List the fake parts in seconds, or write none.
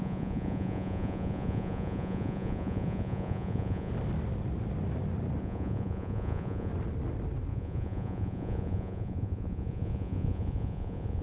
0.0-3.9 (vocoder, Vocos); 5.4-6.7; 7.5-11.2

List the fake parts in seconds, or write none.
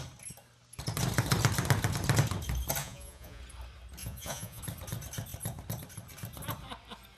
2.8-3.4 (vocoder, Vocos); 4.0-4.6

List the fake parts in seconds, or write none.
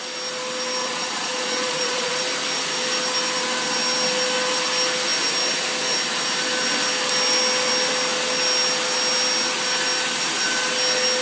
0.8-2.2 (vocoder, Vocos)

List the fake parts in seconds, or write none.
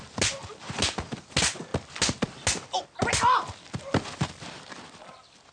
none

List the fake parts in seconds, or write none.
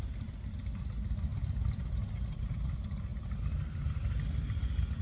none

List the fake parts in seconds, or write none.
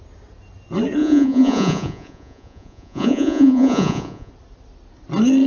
1.0-4.3 (vocoder, Vocos)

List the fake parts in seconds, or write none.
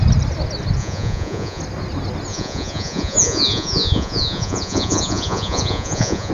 0.8-1.6 (vocoder, Vocos); 2.3-6.3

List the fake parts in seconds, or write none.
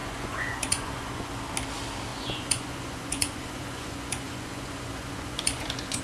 0.0-1.3 (vocoder, Vocos); 2.1-6.0